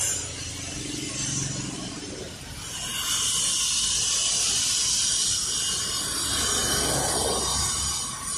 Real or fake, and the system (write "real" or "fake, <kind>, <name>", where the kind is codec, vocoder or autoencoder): real